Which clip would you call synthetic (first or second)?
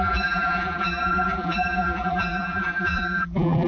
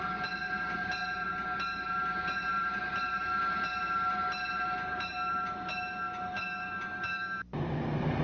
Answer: first